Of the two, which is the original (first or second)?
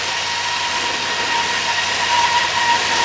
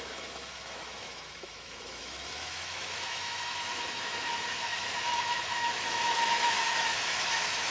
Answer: first